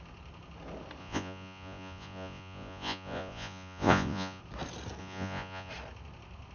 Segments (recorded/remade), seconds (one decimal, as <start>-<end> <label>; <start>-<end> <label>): 0.0-1.0 recorded; 1.0-4.4 remade; 4.4-5.0 recorded; 5.0-5.7 remade; 5.7-6.5 recorded